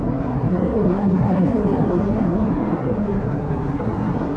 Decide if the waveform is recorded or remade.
remade